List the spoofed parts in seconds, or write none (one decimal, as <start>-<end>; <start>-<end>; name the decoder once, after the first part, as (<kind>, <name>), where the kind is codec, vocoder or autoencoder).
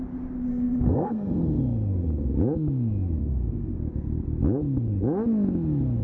0.5-1.6 (codec, SNAC); 3.2-3.8